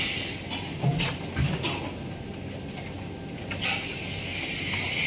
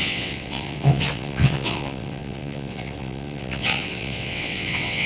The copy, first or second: second